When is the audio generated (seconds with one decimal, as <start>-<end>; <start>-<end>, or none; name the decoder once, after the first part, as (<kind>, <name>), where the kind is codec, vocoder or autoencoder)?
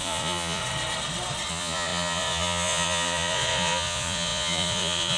0.0-0.6 (vocoder, Vocos); 1.5-5.2